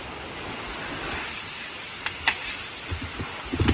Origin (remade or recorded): recorded